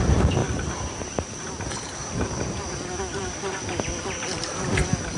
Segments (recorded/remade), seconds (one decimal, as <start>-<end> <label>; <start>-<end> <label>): 0.0-5.2 recorded